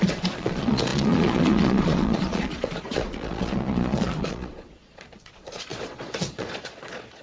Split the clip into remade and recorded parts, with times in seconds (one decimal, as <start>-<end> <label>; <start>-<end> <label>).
0.0-7.2 remade